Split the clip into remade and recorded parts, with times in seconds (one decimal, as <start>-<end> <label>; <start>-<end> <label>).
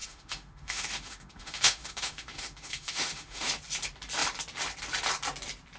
0.0-3.5 remade; 3.5-5.8 recorded